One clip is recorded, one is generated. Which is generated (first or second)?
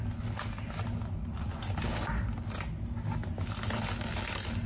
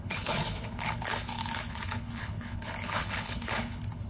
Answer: second